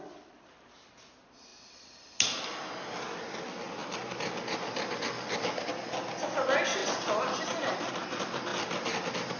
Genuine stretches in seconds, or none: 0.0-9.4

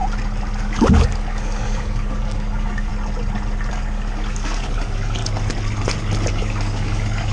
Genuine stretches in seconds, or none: 0.0-0.6; 2.9-3.7; 5.2-6.3

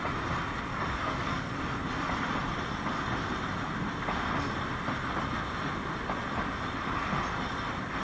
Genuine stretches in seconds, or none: 0.0-0.7; 1.6-8.0

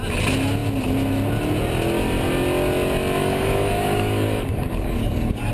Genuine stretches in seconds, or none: 0.0-3.2

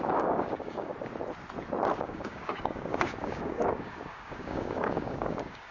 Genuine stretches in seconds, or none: 0.9-1.9